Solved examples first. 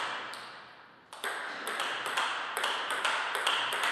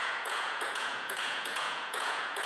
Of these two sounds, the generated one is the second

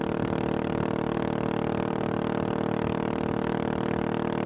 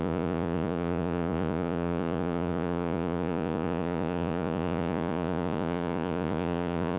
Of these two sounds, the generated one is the second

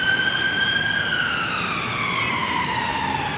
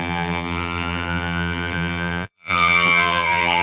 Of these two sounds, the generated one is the second